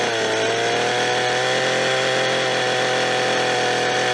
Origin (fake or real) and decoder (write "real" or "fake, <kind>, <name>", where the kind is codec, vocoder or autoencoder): real